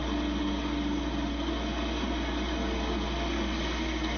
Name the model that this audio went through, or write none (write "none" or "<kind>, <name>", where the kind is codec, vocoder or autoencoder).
none